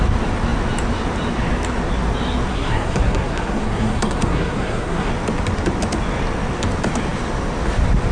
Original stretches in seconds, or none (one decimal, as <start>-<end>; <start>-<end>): 0.0-2.5; 5.1-8.1